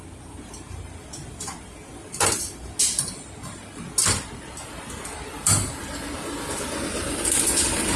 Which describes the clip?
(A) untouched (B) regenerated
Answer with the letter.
A